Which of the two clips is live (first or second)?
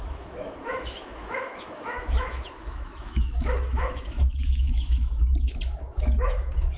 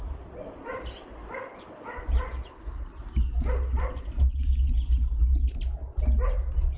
second